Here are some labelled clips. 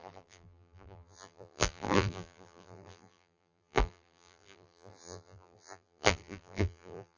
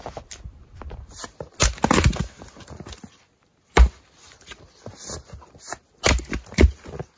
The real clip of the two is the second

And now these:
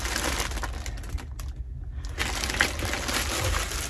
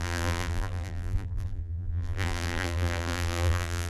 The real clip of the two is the first